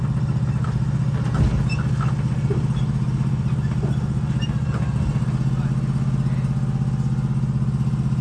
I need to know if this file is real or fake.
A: real